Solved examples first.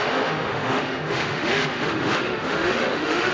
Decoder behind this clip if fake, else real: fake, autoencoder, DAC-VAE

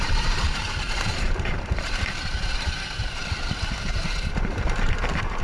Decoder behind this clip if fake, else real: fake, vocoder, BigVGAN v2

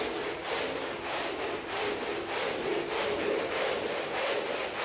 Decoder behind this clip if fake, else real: real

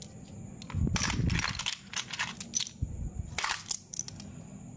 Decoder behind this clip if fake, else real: real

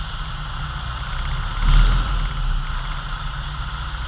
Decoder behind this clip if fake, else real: real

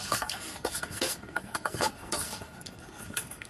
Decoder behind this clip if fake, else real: fake, codec, SNAC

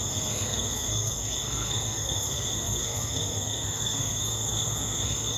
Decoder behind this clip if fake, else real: fake, codec, SNAC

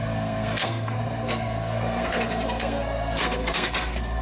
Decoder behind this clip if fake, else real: fake, codec, SNAC